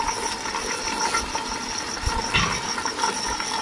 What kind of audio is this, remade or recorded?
recorded